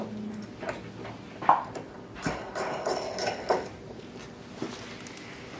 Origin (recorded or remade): recorded